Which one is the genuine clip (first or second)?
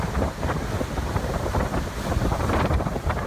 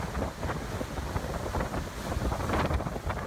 second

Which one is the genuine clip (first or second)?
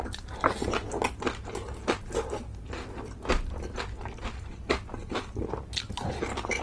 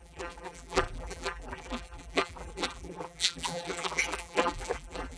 first